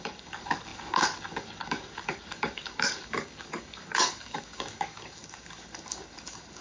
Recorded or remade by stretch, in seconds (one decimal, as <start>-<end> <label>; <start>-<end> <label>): 0.0-6.6 remade